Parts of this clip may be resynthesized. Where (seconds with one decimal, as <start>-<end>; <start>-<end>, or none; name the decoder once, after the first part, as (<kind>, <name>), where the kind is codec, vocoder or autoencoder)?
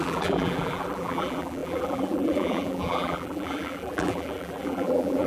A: 0.0-5.3 (vocoder, BigVGAN v2)